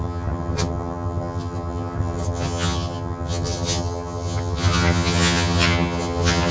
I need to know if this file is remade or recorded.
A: remade